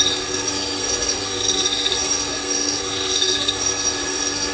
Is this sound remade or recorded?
remade